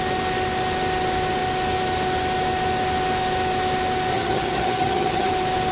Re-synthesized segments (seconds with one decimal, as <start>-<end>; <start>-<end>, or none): 4.1-5.3